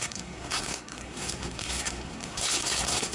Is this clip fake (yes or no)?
yes